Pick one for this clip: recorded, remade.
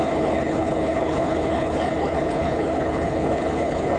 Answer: remade